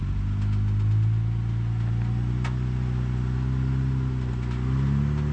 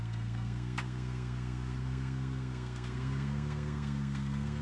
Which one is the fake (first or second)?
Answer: second